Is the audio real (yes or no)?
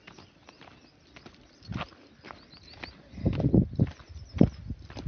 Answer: yes